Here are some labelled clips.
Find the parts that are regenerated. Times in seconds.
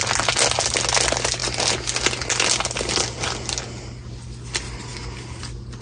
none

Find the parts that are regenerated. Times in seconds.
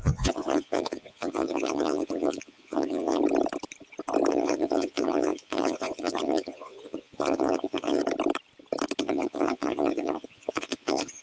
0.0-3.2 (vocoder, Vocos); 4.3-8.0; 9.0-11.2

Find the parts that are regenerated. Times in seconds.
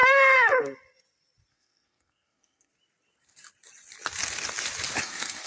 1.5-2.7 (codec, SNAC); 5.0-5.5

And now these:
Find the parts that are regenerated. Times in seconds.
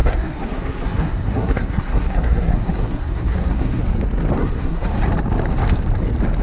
0.0-3.8 (codec, SNAC); 4.4-5.0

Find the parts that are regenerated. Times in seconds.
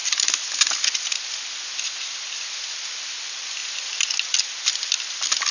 none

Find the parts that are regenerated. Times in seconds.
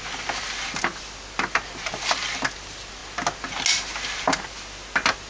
none